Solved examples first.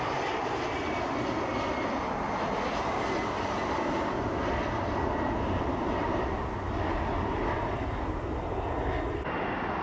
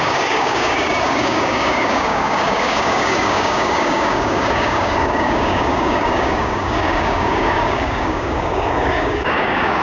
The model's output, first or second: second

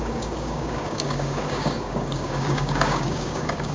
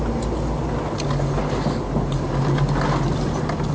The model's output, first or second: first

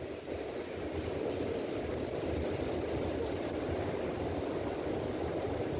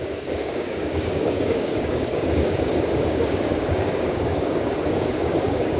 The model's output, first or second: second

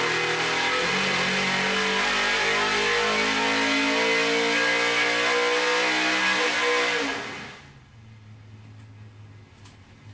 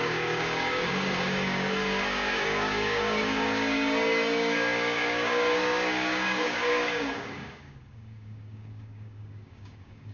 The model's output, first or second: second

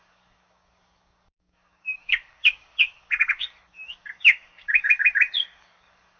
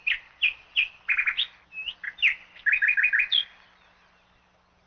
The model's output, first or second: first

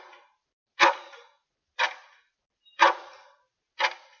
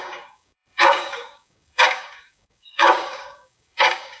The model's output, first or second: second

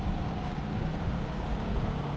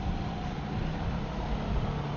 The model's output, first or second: first